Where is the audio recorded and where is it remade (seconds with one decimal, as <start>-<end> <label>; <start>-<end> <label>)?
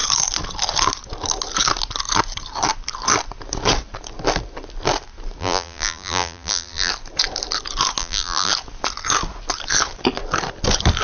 0.0-5.4 recorded; 5.4-6.9 remade; 6.9-8.0 recorded; 8.0-8.5 remade; 8.5-11.0 recorded